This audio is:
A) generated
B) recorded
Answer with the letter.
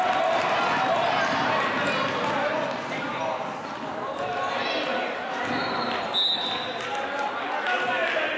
B